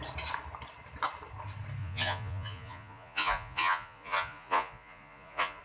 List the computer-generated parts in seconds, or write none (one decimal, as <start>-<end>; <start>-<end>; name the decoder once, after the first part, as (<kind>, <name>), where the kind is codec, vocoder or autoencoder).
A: 1.8-5.6 (vocoder, Vocos)